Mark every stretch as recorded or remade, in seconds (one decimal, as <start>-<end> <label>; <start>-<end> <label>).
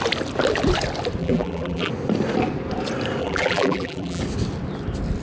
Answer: 0.0-1.2 recorded; 1.2-1.9 remade; 1.9-3.2 recorded; 3.2-4.2 remade; 4.2-5.2 recorded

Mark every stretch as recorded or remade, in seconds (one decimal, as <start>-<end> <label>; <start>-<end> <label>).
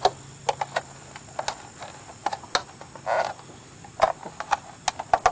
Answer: 0.0-5.3 recorded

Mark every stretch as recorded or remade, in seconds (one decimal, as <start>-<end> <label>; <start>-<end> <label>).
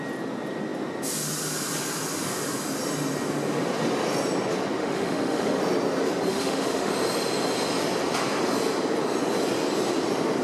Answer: 0.0-4.8 recorded; 4.8-5.6 remade; 5.6-6.3 recorded; 6.3-6.9 remade; 6.9-10.4 recorded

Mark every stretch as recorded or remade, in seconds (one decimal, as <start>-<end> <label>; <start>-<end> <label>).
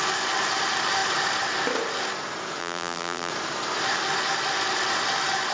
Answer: 0.0-2.6 recorded; 2.6-3.3 remade; 3.3-5.5 recorded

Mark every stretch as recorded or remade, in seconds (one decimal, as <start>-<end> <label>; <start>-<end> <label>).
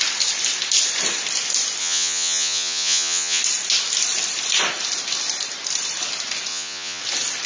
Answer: 0.0-1.8 recorded; 1.8-3.4 remade; 3.4-6.5 recorded; 6.5-7.0 remade; 7.0-7.5 recorded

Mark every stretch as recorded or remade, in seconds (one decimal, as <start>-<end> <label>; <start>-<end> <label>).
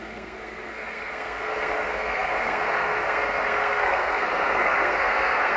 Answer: 0.0-5.6 remade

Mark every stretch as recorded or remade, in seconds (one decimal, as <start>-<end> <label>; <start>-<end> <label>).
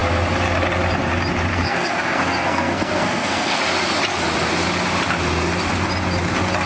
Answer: 0.0-1.5 recorded; 1.5-3.6 remade; 3.6-6.7 recorded